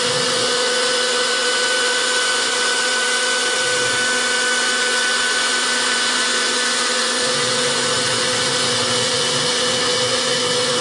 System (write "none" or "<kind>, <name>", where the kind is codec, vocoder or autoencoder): vocoder, Vocos